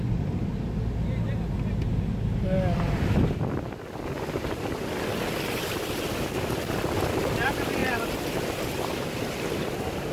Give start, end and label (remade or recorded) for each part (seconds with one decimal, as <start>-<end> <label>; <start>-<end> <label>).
0.0-7.8 recorded; 7.8-8.6 remade; 8.6-10.1 recorded